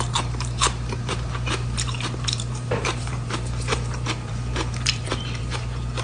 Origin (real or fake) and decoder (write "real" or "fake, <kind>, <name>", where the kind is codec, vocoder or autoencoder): fake, vocoder, BigVGAN v2